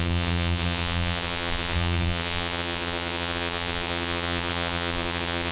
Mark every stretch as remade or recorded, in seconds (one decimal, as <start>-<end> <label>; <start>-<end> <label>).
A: 0.0-5.5 remade